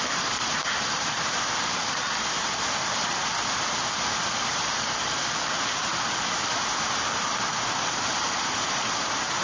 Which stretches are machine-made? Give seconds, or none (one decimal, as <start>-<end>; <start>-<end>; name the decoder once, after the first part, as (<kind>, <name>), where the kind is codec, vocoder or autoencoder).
0.0-3.2 (vocoder, BigVGAN v2); 4.4-5.2; 5.8-6.5; 7.8-9.4

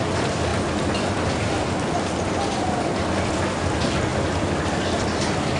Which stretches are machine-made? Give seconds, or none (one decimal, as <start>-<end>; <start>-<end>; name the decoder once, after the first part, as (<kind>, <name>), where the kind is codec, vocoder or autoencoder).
0.0-0.5 (vocoder, BigVGAN v2); 1.0-5.6

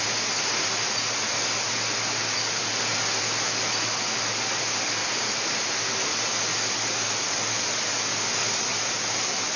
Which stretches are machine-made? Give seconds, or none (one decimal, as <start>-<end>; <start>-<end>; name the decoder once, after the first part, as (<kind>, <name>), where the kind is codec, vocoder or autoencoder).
8.7-9.2 (vocoder, BigVGAN v2)